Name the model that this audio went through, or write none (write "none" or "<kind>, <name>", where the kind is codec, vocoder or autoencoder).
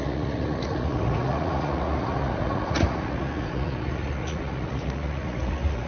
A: vocoder, Vocos